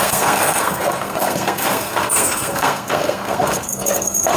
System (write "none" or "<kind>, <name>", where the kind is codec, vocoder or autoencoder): codec, SNAC